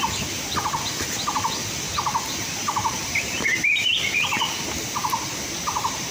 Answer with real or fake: real